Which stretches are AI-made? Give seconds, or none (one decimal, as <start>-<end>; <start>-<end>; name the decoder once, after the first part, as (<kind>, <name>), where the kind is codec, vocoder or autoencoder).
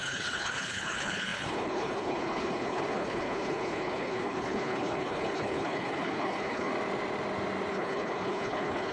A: 0.0-6.7 (codec, HILCodec); 7.7-8.9